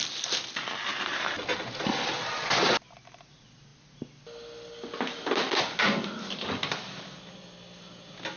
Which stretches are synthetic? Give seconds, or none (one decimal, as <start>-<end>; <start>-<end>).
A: none